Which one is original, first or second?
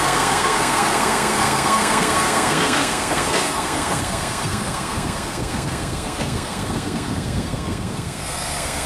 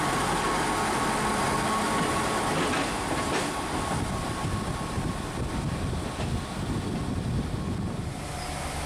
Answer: second